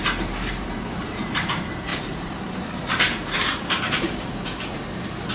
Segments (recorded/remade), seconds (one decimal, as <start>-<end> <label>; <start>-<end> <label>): 0.0-5.3 remade